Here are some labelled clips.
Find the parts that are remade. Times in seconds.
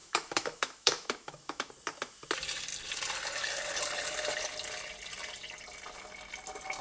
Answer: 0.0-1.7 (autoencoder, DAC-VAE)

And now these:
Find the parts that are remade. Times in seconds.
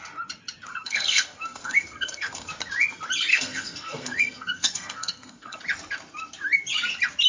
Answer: 0.7-2.5 (codec, SNAC); 3.3-5.6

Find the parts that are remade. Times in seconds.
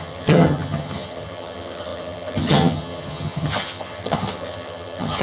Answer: 0.0-5.2 (vocoder, HiFi-GAN)